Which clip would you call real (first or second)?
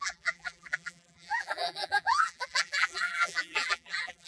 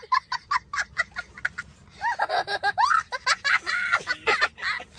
second